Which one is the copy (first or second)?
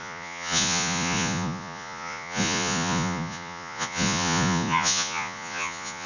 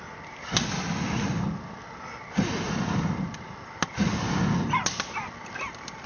first